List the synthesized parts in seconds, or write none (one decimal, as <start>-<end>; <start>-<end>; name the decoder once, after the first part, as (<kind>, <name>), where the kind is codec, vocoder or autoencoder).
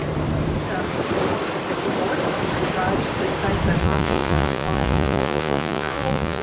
3.8-6.4 (vocoder, Vocos)